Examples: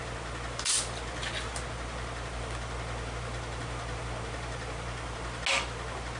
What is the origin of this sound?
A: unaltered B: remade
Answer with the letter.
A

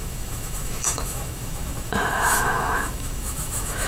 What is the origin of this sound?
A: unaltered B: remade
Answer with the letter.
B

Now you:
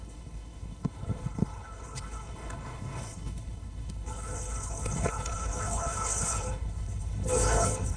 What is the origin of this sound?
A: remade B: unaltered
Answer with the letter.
A